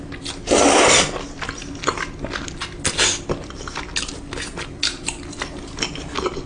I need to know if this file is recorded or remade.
recorded